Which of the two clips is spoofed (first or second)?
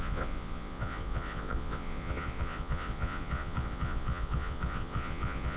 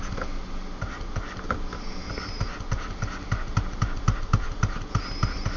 first